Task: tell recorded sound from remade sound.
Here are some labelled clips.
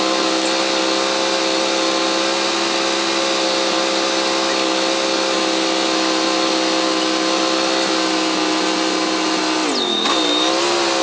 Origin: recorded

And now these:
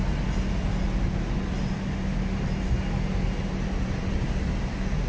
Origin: recorded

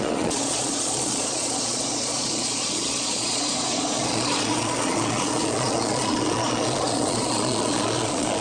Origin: remade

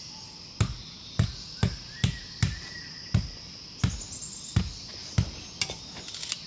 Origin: recorded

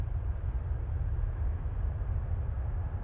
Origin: recorded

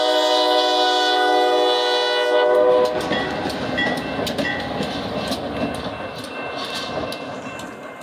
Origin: recorded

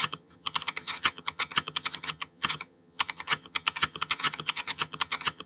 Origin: remade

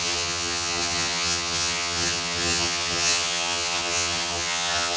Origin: remade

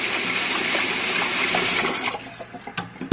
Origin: recorded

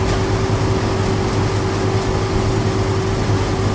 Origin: recorded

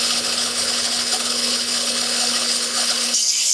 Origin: remade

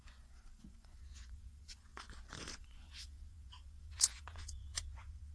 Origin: remade